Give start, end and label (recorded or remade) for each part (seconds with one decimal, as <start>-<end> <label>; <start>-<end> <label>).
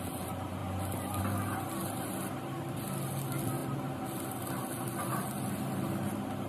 0.0-6.5 recorded